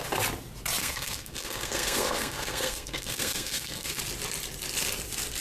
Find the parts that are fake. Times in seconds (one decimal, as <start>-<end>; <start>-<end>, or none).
0.8-4.0